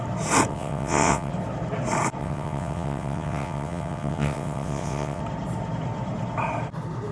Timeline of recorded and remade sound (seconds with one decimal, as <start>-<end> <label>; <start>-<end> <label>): 0.0-0.5 recorded; 0.5-1.3 remade; 1.3-2.2 recorded; 2.2-5.2 remade; 5.2-7.1 recorded